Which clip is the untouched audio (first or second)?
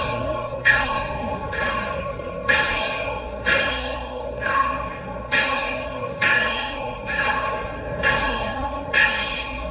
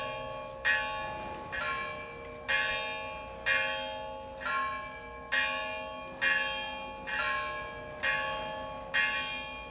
second